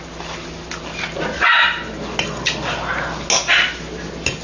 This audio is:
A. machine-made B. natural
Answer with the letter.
B